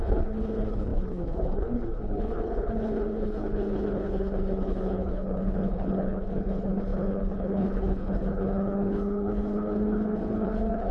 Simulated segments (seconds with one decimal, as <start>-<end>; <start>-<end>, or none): 0.0-10.9